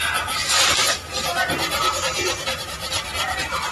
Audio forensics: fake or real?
real